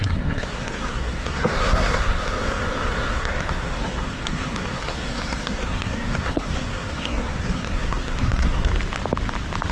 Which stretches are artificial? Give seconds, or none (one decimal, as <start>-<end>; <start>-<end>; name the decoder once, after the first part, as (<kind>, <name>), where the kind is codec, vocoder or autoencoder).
0.0-8.7 (codec, SNAC)